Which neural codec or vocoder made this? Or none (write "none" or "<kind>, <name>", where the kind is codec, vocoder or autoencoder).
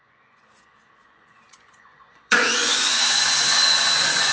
vocoder, Vocos